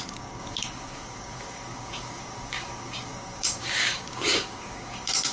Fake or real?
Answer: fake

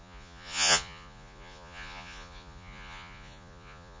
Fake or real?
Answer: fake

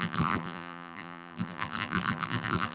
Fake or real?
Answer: fake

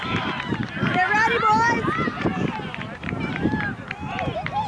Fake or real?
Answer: fake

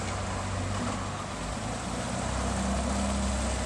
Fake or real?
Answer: real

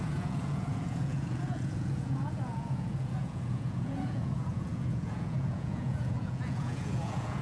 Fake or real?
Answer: fake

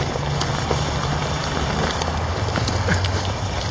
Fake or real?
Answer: real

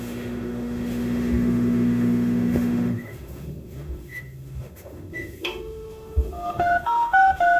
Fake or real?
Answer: fake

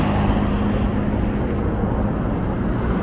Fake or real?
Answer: real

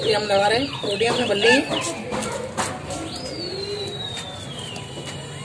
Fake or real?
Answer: real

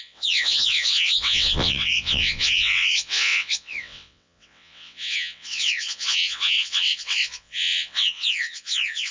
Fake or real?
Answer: fake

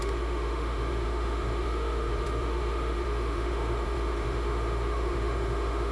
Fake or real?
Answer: fake